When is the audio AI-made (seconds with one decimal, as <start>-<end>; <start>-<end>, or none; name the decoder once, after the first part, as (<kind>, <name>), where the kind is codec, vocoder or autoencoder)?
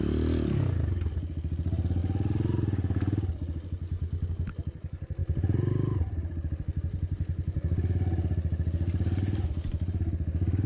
5.2-6.8 (vocoder, BigVGAN v2)